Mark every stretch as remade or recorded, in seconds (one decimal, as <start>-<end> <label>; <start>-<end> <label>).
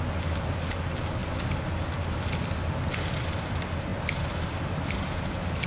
0.0-5.7 recorded